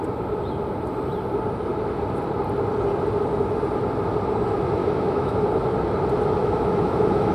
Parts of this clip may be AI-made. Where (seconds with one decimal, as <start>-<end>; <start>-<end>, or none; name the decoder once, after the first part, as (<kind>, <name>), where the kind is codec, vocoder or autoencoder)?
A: 4.8-5.4 (autoencoder, DAC-VAE); 6.4-7.3